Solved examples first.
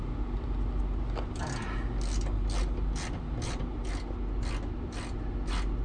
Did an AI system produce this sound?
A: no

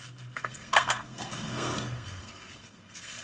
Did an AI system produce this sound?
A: yes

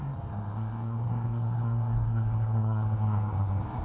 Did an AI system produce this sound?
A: yes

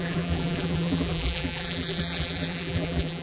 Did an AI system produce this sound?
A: yes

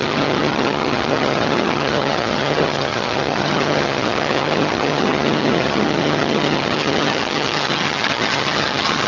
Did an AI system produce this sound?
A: yes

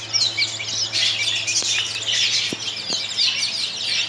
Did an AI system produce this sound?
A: no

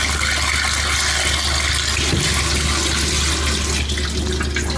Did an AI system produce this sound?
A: no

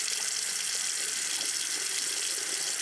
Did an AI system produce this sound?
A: no